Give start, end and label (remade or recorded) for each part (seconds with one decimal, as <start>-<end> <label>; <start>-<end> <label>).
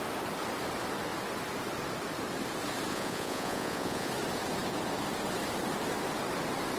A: 0.0-2.9 recorded; 2.9-4.1 remade; 4.1-6.8 recorded